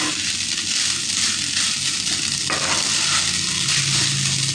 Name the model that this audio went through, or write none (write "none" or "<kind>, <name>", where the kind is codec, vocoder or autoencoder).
none